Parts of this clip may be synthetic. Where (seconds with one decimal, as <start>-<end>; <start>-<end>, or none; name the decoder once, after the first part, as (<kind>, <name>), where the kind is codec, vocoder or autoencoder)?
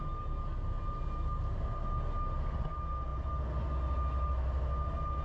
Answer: none